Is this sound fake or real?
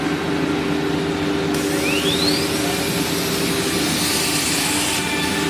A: real